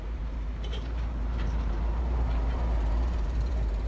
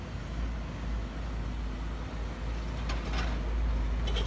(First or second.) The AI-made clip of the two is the first